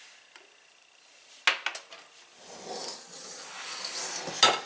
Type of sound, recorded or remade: recorded